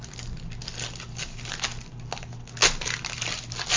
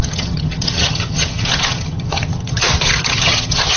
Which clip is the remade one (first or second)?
second